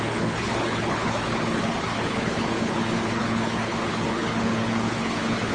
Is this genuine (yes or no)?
no